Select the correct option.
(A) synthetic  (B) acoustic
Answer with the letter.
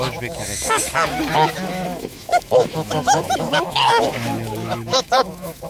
A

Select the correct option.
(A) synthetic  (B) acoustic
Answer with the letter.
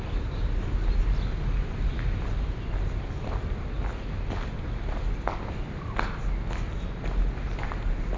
B